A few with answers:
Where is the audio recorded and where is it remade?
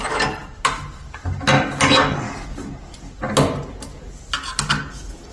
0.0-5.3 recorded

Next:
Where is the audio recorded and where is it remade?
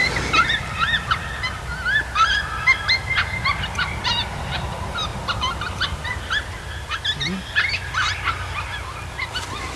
0.0-1.7 remade; 1.7-5.1 recorded; 5.1-6.6 remade; 6.6-9.8 recorded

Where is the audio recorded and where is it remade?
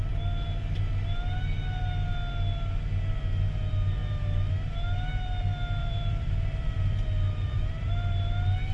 0.0-5.8 recorded; 5.8-7.9 remade; 7.9-8.7 recorded